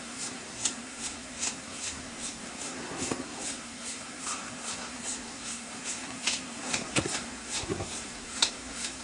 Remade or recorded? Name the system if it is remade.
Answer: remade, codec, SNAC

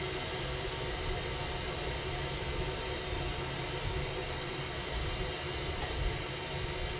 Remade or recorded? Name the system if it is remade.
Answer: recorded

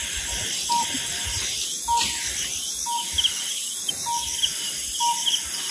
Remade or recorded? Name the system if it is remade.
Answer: recorded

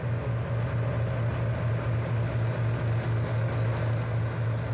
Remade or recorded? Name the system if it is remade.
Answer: recorded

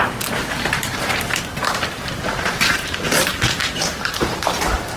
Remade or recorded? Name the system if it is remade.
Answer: remade, vocoder, BigVGAN v2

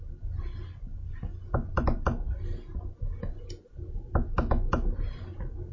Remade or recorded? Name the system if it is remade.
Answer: recorded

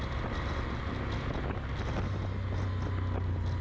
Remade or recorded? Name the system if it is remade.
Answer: recorded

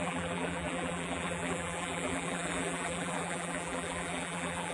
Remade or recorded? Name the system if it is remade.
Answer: remade, vocoder, BigVGAN v2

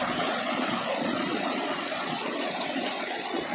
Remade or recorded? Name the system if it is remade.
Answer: remade, vocoder, Vocos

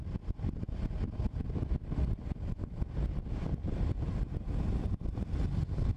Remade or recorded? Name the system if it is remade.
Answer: recorded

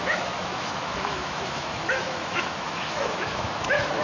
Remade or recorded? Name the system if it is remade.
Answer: remade, autoencoder, DAC-VAE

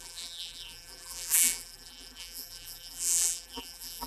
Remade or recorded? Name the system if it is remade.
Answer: remade, vocoder, BigVGAN v2